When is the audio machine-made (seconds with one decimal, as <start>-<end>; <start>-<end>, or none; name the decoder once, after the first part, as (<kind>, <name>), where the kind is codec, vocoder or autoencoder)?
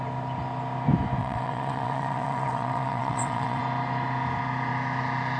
1.2-3.6 (vocoder, WaveNeXt)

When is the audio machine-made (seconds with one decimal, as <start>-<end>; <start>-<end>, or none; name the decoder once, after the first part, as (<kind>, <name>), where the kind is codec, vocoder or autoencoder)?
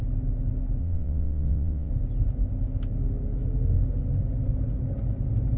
0.8-1.9 (vocoder, WaveNeXt)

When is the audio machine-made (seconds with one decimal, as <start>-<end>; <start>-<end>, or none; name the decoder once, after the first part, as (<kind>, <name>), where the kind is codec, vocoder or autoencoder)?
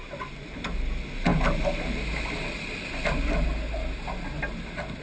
none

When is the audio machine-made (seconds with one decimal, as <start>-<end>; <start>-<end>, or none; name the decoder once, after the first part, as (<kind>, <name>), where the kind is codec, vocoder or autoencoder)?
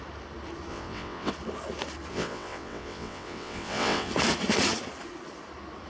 0.7-1.3 (vocoder, WaveNeXt); 2.1-4.1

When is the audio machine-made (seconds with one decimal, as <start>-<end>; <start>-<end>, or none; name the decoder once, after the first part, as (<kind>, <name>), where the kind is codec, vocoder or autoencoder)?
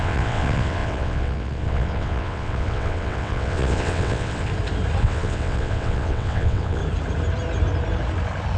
0.0-4.5 (vocoder, WaveNeXt); 5.0-6.8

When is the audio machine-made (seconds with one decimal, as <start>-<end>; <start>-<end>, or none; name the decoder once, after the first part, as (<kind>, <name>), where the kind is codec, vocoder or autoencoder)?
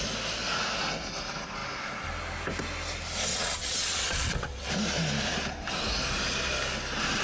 3.3-4.7 (vocoder, WaveNeXt)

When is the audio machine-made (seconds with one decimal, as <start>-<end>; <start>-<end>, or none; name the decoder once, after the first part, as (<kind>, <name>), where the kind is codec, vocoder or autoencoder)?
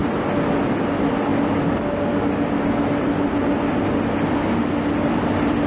none